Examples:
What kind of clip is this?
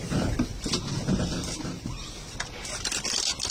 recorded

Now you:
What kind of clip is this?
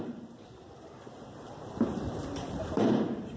remade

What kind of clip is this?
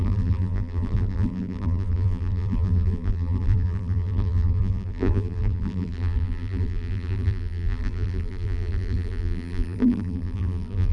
remade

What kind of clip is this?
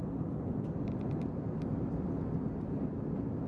recorded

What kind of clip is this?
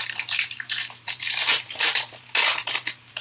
remade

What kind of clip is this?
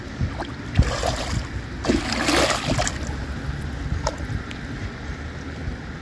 recorded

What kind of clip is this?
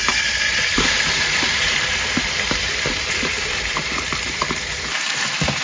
remade